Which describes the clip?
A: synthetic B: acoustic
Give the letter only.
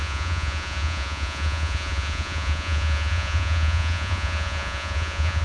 A